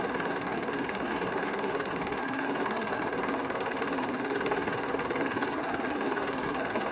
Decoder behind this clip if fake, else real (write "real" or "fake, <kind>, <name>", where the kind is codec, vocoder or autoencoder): fake, codec, SNAC